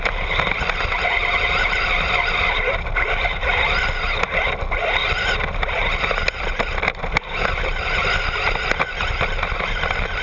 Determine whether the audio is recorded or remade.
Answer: recorded